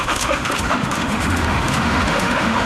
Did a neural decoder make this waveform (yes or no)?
yes